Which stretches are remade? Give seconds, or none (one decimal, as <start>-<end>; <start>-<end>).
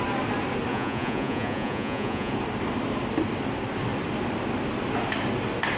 0.7-2.3